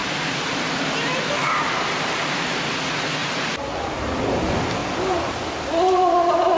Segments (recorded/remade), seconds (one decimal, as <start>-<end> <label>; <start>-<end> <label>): 0.0-1.4 recorded; 1.4-2.7 remade; 2.7-3.2 recorded; 3.2-4.2 remade; 4.2-4.8 recorded; 4.8-5.4 remade; 5.4-6.6 recorded